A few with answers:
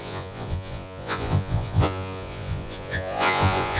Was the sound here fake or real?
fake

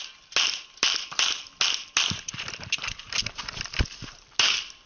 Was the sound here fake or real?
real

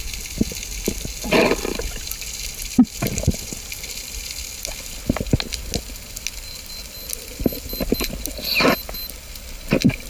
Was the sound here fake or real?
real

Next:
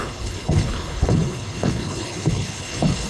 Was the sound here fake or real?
fake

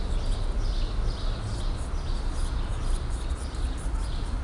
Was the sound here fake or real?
real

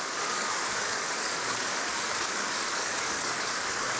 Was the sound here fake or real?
fake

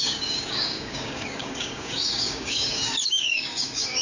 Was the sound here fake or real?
fake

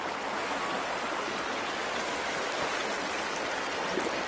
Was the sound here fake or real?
real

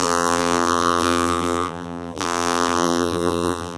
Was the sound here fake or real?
fake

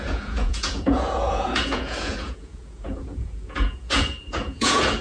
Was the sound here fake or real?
fake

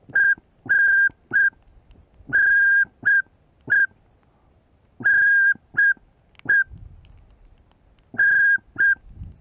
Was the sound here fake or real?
real